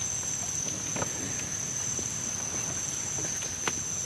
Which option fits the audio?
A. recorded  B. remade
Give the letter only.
A